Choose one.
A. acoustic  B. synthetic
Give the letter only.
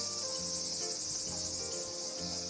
A